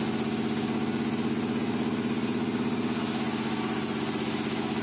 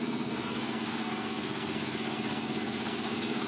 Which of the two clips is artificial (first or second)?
second